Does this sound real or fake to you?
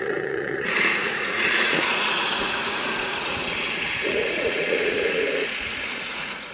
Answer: fake